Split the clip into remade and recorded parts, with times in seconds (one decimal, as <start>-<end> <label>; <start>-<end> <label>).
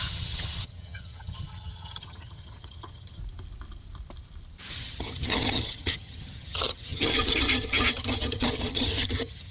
0.0-3.2 remade; 3.2-4.7 recorded; 4.7-9.5 remade